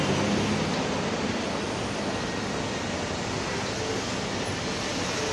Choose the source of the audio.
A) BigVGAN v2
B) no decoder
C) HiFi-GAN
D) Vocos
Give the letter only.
B